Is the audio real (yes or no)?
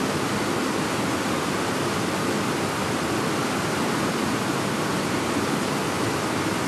yes